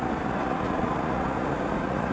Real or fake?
fake